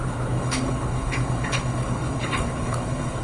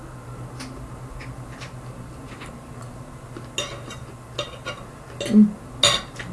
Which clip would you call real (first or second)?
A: second